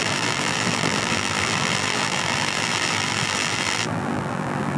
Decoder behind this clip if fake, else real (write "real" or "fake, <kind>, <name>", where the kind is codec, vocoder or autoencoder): fake, vocoder, BigVGAN v2